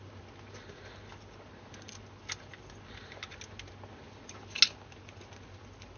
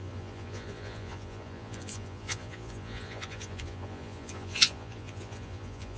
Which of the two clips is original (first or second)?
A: first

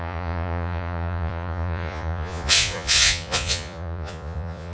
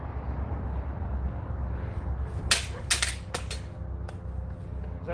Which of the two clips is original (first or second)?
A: second